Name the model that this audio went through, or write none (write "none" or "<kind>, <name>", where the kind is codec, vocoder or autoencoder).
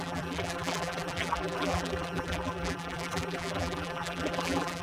vocoder, BigVGAN v2